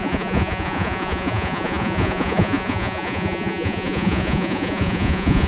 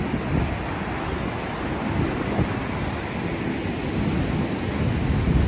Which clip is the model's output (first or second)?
first